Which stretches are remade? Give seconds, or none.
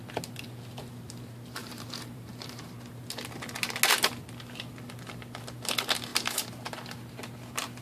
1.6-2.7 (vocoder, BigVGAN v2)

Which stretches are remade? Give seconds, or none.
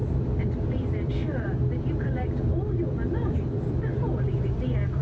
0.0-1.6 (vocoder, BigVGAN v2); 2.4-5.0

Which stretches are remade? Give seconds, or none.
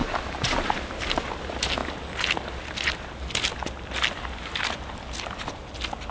0.0-1.0 (vocoder, BigVGAN v2)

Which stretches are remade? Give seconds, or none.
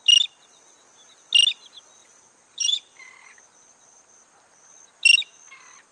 2.0-3.4 (vocoder, BigVGAN v2)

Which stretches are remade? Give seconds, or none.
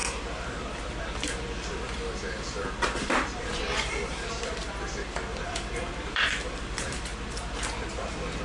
0.0-7.1 (vocoder, BigVGAN v2)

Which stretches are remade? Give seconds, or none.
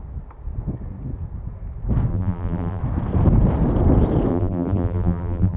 2.1-2.8 (vocoder, BigVGAN v2); 4.3-5.6